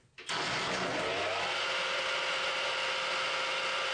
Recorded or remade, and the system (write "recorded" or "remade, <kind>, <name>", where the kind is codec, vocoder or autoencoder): recorded